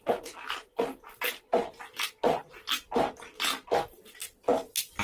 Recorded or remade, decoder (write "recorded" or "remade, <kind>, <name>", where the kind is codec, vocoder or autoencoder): recorded